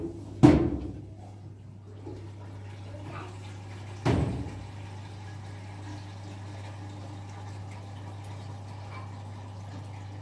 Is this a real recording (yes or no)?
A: yes